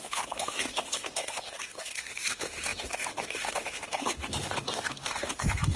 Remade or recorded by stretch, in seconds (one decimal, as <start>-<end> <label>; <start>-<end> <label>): 0.0-5.8 remade